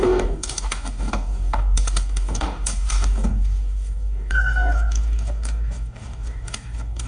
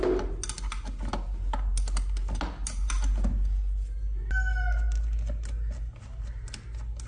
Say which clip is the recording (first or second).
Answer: second